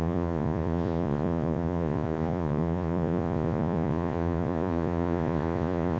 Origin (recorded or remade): remade